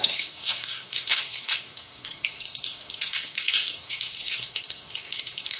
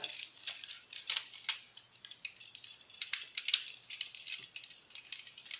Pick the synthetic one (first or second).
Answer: first